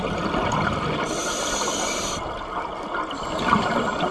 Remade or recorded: recorded